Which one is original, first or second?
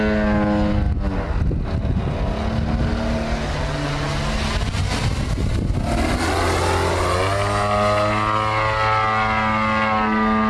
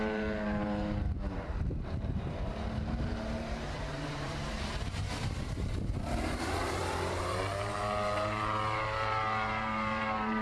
first